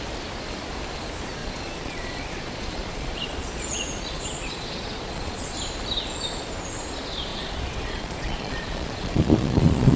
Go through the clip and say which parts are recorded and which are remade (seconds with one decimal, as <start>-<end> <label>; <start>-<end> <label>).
0.0-1.4 recorded; 1.4-5.6 remade; 5.6-7.3 recorded; 7.3-10.0 remade